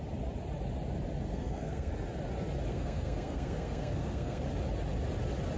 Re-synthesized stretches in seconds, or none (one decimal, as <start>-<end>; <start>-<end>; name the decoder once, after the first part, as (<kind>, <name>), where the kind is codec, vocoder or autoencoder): 1.3-1.9 (codec, SNAC); 2.7-4.4